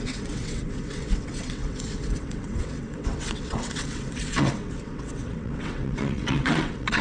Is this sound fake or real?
fake